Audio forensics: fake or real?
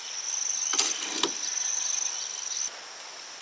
real